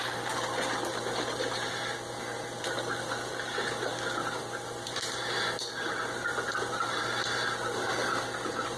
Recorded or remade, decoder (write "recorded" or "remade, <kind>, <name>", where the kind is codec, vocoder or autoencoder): recorded